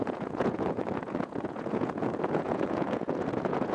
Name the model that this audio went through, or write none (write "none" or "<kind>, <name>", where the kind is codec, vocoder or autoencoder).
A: vocoder, Vocos